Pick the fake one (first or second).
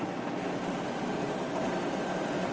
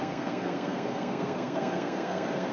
second